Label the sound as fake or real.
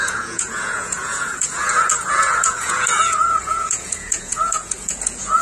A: fake